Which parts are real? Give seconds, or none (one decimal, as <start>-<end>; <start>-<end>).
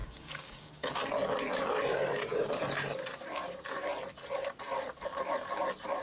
1.1-6.0